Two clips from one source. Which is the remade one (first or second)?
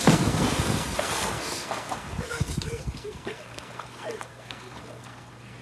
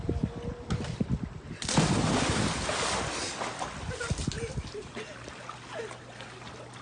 first